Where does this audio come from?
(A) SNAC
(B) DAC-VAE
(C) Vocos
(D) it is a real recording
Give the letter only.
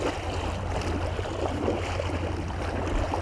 D